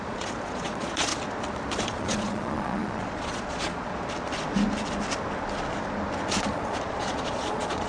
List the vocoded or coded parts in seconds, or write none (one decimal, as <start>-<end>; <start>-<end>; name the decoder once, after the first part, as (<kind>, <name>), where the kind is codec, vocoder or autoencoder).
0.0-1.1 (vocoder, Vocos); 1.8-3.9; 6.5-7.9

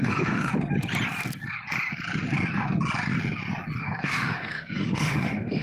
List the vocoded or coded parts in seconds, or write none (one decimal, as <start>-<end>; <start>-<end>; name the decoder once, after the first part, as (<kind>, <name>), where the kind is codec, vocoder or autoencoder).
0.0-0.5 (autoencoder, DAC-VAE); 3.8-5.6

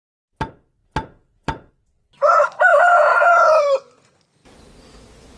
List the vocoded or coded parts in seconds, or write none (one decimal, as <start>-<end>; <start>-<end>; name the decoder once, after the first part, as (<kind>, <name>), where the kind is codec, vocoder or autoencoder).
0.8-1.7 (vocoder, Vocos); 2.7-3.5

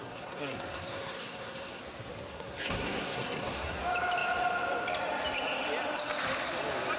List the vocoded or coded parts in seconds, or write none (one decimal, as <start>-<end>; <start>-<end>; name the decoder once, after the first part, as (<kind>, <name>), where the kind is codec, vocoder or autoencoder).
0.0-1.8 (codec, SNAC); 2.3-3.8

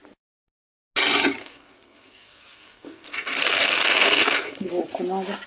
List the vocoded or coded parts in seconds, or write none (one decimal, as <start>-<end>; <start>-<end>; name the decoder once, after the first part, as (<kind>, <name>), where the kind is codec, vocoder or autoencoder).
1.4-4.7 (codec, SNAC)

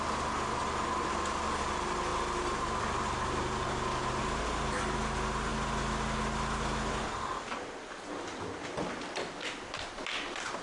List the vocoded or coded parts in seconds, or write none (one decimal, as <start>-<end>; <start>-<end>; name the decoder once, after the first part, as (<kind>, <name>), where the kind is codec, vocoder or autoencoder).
2.1-4.2 (vocoder, BigVGAN v2); 5.5-8.9

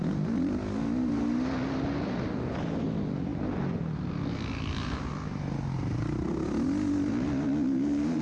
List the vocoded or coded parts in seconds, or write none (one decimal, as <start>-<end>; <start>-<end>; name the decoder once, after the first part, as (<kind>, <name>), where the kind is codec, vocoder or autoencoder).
none

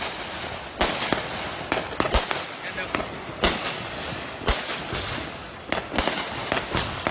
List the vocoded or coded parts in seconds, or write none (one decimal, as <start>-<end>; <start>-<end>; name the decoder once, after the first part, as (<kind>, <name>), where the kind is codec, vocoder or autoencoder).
none